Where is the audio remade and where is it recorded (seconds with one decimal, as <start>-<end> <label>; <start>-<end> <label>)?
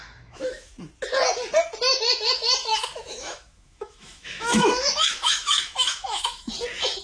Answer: 0.0-0.7 remade; 0.7-2.7 recorded; 2.7-6.5 remade; 6.5-7.0 recorded